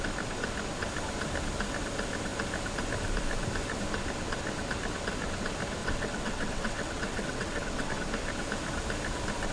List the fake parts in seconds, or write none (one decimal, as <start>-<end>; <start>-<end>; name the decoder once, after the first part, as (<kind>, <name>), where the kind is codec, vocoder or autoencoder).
5.8-7.9 (vocoder, WaveNeXt)